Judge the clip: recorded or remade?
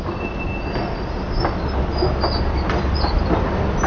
recorded